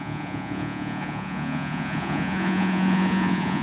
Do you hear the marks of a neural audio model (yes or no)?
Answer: yes